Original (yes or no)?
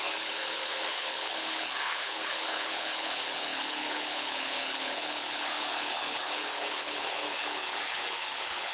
no